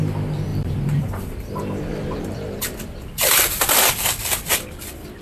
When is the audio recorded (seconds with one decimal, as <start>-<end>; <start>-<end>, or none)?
0.0-0.5; 3.6-5.2